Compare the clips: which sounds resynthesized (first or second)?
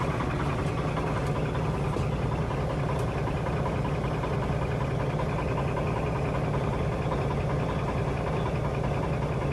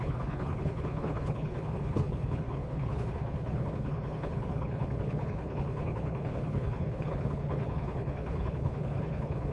second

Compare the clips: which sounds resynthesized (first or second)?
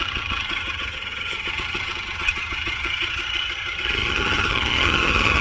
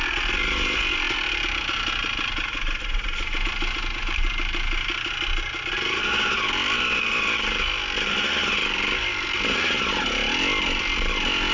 first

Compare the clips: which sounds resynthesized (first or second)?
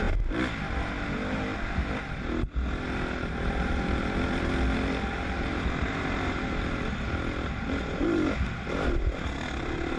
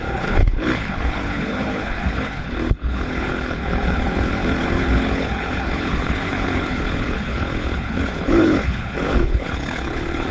second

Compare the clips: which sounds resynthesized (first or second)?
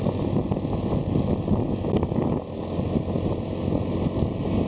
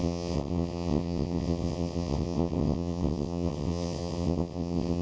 second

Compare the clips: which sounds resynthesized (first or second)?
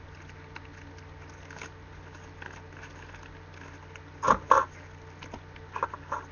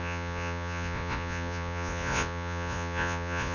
second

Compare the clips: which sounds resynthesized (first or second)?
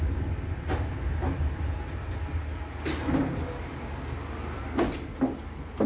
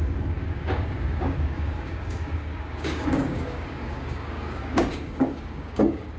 second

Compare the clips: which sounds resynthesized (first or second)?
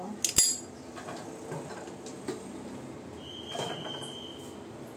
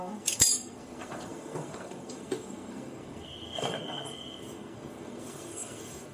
second